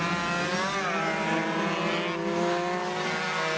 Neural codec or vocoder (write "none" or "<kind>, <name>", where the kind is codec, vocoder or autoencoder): none